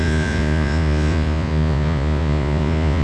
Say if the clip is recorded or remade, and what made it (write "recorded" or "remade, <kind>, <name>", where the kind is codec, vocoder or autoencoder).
remade, vocoder, Vocos